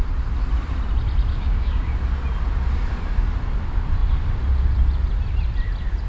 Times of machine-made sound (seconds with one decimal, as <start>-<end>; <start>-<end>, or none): 1.3-1.9